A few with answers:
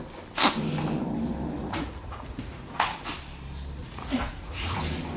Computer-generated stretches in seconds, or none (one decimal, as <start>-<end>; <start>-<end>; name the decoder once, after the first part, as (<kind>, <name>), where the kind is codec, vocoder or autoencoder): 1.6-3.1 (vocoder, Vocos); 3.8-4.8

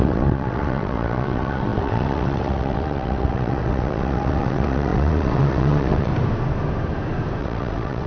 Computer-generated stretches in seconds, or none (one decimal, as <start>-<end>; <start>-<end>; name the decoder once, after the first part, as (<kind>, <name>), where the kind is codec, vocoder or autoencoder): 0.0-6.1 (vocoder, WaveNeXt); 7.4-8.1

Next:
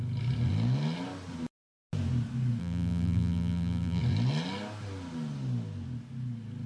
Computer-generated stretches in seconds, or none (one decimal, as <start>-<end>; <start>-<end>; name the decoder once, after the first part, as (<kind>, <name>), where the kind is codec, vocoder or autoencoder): 2.6-4.0 (vocoder, BigVGAN v2)

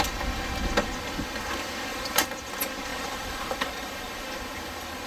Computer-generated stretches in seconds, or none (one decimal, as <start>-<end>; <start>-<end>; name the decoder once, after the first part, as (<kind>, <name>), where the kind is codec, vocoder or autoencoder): 1.9-2.5 (vocoder, BigVGAN v2); 2.9-5.1